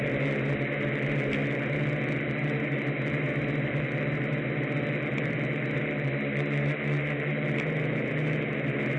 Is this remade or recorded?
recorded